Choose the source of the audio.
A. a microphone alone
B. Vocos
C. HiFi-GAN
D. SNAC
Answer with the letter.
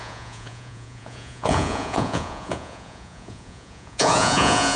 B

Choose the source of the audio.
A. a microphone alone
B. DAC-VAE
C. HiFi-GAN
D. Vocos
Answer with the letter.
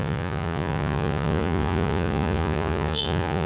D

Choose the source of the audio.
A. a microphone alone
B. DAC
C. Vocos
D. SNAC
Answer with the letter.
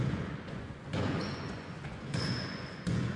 C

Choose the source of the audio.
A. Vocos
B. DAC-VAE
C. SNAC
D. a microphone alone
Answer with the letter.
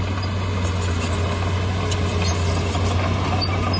D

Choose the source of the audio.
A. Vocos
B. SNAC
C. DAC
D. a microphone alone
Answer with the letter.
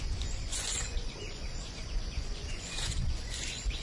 A